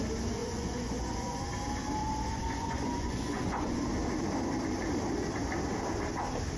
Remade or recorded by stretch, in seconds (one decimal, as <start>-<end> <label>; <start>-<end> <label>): 0.0-0.4 recorded; 0.4-1.4 remade; 1.4-2.0 recorded; 2.0-3.8 remade; 3.8-6.6 recorded